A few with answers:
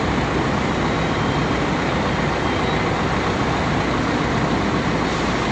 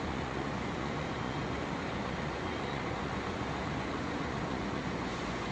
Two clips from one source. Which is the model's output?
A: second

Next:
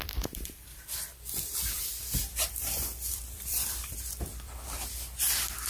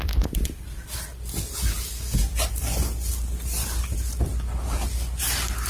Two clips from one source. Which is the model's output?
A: first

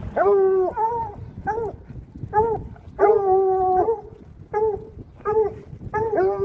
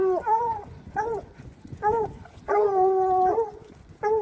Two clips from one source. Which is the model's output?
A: second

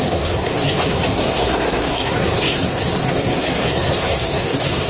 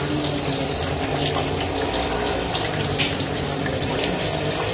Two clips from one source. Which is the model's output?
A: first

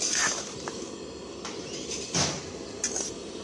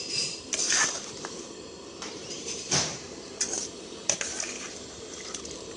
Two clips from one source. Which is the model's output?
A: second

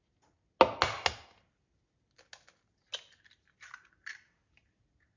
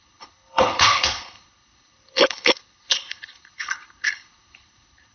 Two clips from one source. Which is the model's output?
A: second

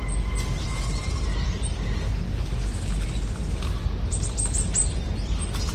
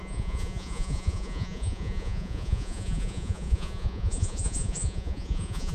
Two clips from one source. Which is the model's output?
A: second